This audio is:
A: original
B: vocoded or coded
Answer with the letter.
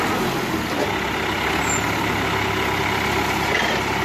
A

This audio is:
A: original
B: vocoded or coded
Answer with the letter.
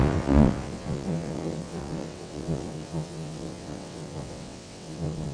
B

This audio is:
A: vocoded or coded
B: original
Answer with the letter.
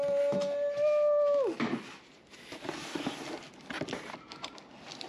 B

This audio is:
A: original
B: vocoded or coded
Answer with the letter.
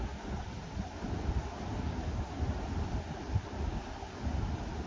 A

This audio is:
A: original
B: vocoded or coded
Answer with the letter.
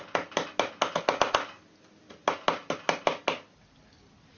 A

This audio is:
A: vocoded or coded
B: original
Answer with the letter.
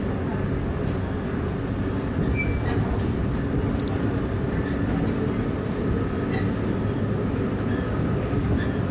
B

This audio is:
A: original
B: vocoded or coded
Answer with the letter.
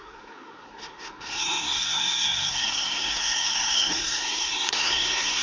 B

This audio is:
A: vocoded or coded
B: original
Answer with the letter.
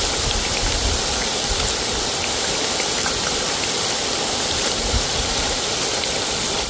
A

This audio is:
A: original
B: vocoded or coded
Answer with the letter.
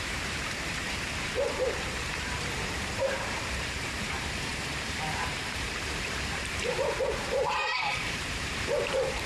B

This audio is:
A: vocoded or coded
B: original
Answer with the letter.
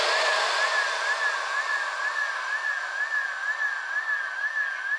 B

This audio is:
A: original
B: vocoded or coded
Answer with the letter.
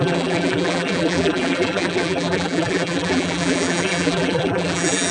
B